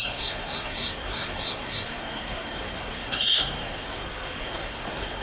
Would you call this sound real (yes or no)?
no